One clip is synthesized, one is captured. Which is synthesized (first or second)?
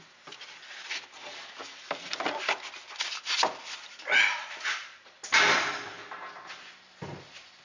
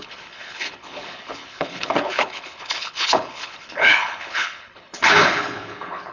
second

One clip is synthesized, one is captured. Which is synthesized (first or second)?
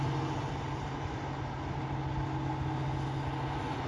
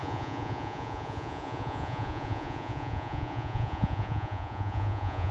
second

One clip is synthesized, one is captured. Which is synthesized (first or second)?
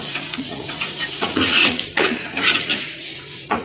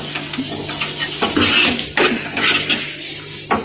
first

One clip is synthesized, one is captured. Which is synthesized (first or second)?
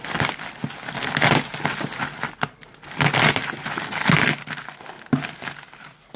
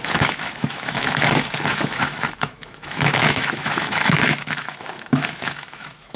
second